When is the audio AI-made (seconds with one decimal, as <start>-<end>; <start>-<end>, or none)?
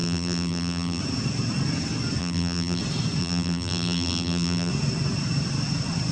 0.0-1.0; 2.2-2.8; 3.2-4.7